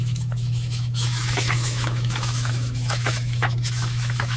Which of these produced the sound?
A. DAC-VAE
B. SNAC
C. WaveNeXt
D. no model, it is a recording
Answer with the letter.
A